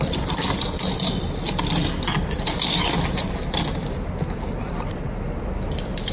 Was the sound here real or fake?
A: fake